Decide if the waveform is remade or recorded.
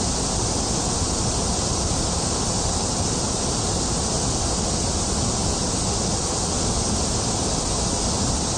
recorded